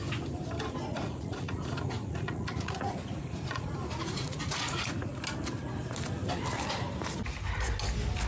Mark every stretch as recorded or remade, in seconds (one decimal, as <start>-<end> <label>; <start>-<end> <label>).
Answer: 0.0-0.9 recorded; 0.9-5.2 remade; 5.2-8.3 recorded